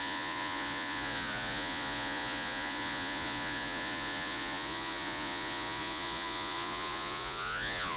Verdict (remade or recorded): remade